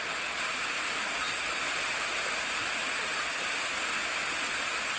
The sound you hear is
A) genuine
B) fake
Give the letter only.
A